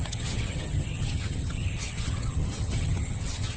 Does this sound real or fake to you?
fake